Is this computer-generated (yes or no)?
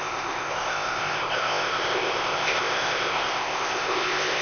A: yes